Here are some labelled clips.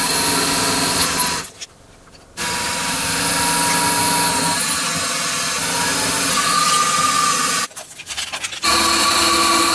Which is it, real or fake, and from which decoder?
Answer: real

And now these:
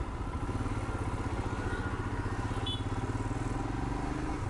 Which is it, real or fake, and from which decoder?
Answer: real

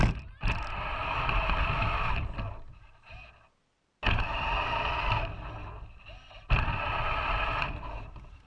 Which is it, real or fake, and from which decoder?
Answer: real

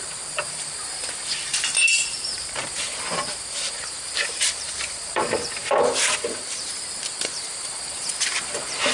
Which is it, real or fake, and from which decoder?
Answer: fake, vocoder, BigVGAN v2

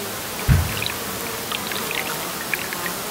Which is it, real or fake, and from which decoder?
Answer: real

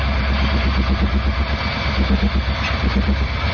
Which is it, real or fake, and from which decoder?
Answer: fake, vocoder, BigVGAN v2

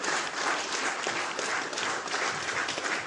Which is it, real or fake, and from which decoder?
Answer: fake, vocoder, BigVGAN v2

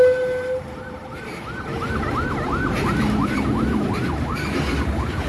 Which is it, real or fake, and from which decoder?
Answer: real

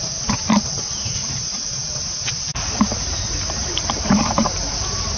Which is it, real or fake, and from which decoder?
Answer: fake, vocoder, BigVGAN v2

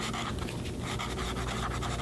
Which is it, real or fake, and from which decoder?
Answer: real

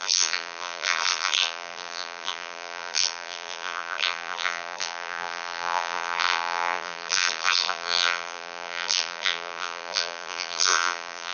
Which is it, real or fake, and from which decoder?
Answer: fake, vocoder, BigVGAN v2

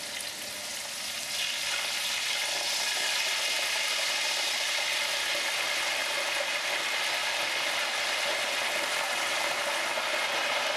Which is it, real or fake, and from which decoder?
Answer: real